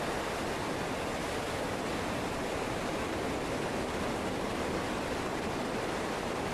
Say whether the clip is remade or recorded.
recorded